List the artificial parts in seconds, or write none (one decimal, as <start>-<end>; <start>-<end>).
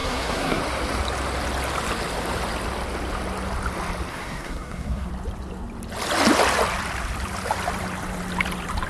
0.0-0.6; 4.1-5.1